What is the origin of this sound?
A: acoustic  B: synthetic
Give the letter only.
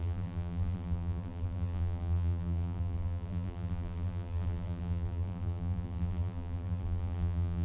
B